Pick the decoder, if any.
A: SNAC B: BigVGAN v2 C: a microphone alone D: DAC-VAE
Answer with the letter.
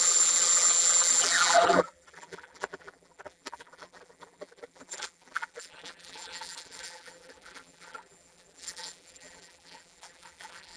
B